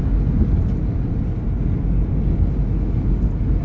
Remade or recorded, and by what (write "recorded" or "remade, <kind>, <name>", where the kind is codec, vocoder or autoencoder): recorded